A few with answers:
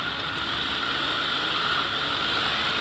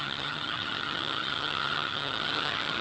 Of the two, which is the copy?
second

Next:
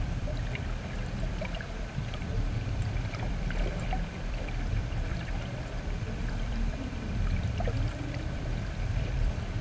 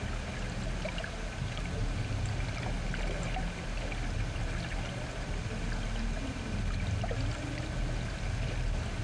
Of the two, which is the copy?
first